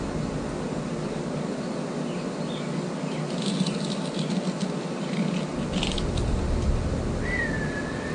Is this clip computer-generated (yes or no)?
no